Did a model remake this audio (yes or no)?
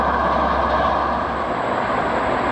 no